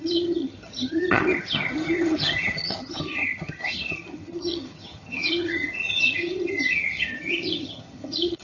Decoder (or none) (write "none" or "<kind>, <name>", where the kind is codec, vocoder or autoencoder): vocoder, HiFi-GAN